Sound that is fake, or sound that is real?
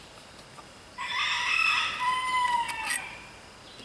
real